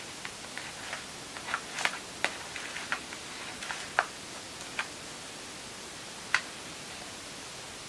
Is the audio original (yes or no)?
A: yes